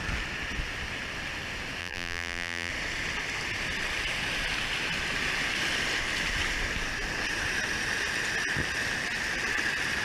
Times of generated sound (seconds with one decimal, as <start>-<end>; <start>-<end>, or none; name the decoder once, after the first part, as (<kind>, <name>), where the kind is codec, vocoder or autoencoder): 1.8-2.7 (vocoder, BigVGAN v2)